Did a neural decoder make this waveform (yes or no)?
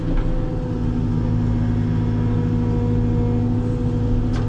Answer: no